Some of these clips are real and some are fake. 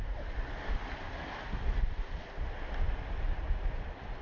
real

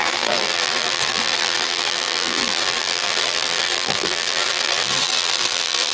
fake